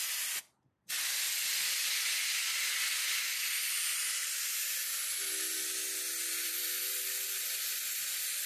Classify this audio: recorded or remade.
recorded